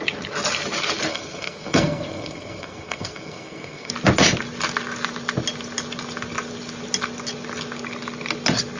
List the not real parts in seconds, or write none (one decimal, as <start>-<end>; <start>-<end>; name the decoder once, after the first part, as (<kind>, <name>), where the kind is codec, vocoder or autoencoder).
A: 1.1-3.9 (codec, SNAC)